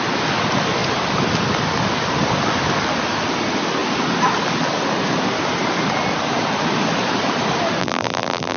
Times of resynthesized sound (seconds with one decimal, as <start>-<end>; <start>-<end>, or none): 7.8-8.6